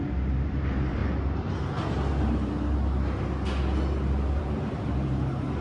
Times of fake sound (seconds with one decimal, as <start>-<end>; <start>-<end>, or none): 0.0-1.0; 4.4-5.6